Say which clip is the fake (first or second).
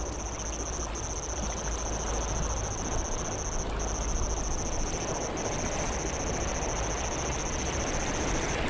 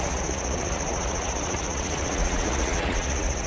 second